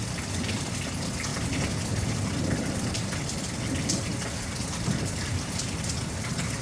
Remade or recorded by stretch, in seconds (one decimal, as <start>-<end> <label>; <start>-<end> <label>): 0.0-1.3 recorded; 1.3-2.4 remade; 2.4-6.6 recorded